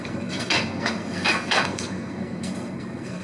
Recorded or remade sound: remade